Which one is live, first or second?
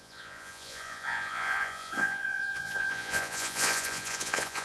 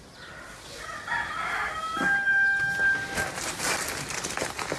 second